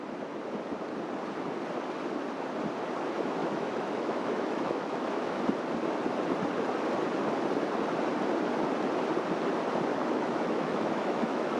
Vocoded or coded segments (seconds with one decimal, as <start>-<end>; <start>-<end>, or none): 3.4-5.4; 9.9-11.6